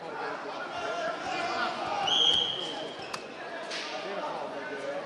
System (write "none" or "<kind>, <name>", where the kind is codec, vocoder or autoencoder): vocoder, Vocos